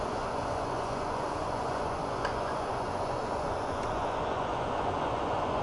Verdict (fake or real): fake